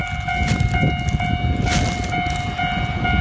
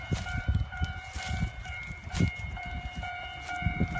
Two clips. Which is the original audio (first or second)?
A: first